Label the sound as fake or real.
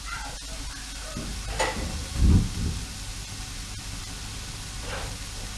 real